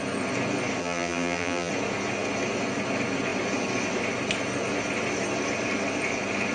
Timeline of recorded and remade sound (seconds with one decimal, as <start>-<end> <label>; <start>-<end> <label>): 0.0-0.8 recorded; 0.8-1.7 remade; 1.7-6.5 recorded